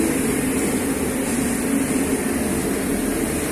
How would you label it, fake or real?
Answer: real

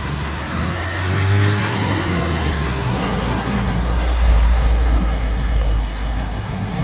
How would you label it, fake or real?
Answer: fake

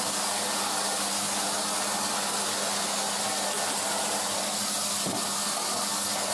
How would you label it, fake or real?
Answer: real